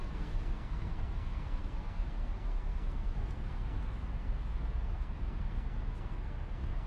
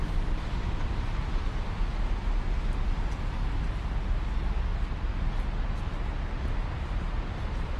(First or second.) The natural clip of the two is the second